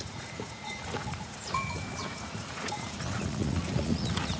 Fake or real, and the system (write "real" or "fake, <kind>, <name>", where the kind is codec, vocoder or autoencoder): fake, vocoder, Vocos